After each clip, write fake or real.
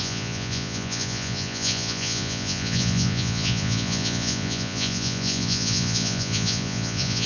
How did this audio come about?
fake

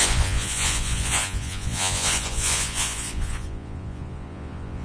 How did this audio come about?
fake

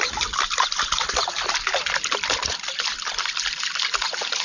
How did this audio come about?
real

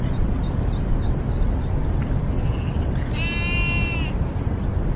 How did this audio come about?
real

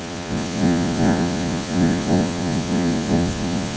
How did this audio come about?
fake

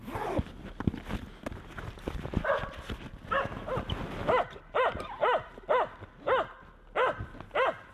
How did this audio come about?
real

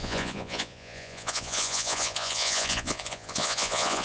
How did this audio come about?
fake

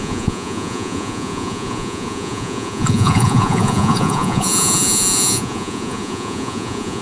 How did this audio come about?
fake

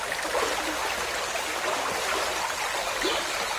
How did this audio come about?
real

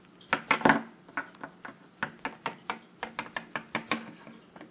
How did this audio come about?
real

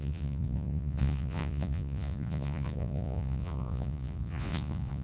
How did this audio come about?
fake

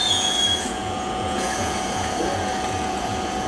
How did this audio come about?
fake